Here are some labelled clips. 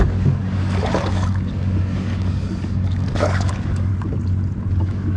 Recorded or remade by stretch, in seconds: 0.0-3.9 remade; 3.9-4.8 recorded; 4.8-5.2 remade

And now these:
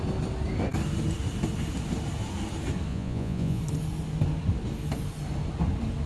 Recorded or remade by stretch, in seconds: 0.0-2.9 recorded; 2.9-3.6 remade; 3.6-6.1 recorded

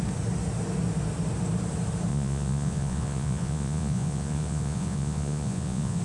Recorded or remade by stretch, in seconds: 0.0-2.1 recorded; 2.1-6.0 remade

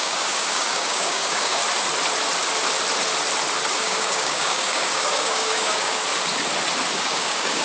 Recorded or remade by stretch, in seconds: 0.0-1.6 remade; 1.6-3.8 recorded; 3.8-6.0 remade; 6.0-7.0 recorded; 7.0-7.6 remade

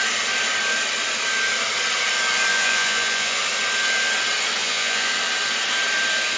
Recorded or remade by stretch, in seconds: 0.0-2.5 recorded; 2.5-3.4 remade; 3.4-4.6 recorded; 4.6-5.1 remade; 5.1-6.4 recorded

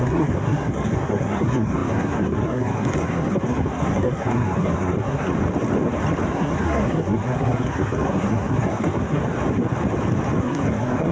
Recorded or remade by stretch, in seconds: 0.0-5.3 remade; 5.3-6.3 recorded; 6.3-9.2 remade; 9.2-10.4 recorded; 10.4-11.1 remade